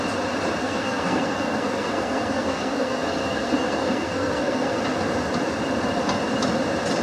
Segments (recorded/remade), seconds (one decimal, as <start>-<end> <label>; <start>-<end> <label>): 0.0-0.6 recorded; 0.6-4.8 remade; 4.8-7.0 recorded